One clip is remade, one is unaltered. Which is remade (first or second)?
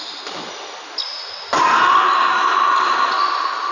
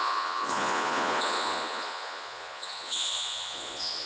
second